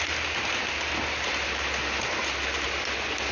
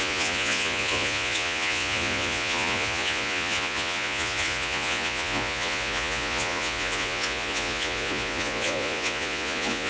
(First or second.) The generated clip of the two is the second